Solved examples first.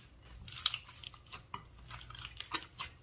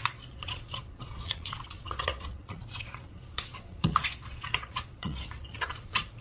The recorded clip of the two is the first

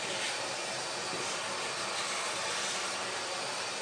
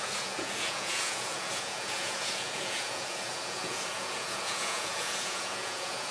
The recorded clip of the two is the first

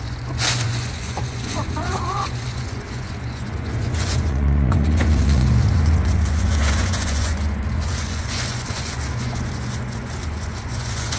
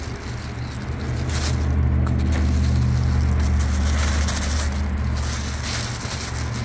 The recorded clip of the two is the second